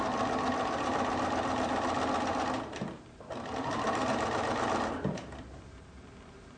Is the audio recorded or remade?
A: recorded